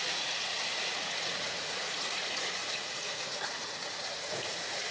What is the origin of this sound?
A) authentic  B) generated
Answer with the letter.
B